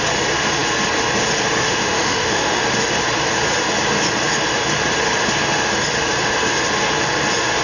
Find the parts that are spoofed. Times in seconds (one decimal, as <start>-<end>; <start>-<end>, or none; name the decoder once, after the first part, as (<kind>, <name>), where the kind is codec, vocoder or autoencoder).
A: 1.6-2.6 (autoencoder, DAC-VAE)